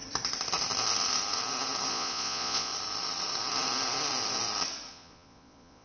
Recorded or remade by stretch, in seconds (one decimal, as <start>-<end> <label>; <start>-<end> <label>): 0.0-1.9 recorded; 1.9-2.7 remade; 2.7-4.9 recorded; 4.9-5.8 remade